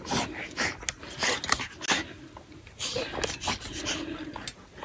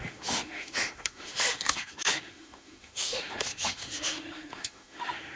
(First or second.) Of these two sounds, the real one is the first